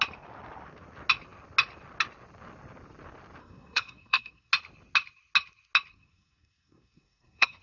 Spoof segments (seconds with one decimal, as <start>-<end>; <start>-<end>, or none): 3.4-4.5; 5.9-7.6